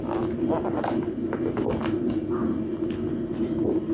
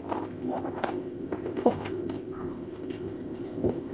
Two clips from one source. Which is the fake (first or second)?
second